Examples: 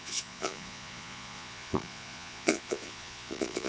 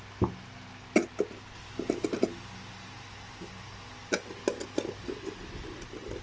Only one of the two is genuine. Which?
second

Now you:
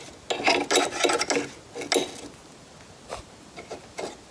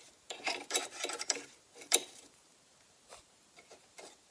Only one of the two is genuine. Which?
first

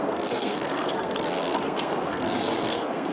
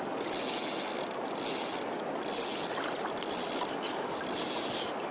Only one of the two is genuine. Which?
second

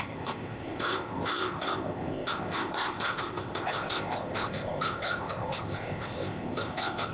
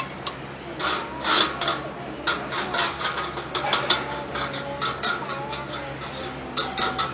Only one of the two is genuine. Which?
second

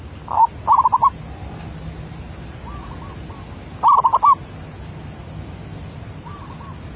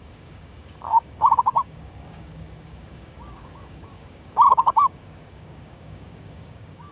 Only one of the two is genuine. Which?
first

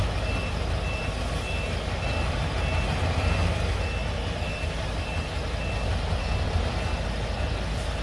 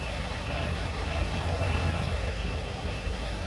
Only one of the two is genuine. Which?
first